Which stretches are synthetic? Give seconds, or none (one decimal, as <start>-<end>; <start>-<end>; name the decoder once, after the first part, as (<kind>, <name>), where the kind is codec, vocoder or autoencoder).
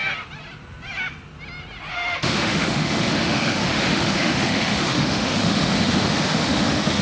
1.9-7.0 (autoencoder, DAC-VAE)